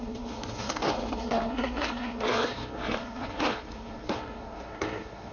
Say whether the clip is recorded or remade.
remade